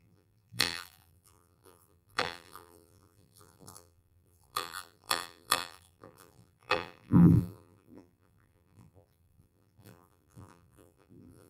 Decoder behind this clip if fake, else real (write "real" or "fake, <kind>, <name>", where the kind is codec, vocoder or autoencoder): fake, vocoder, BigVGAN v2